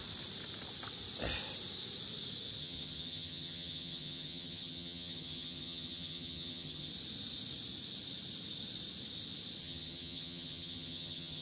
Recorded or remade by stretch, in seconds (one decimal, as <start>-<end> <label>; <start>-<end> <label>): 0.0-2.6 recorded; 2.6-6.9 remade; 6.9-9.6 recorded; 9.6-11.4 remade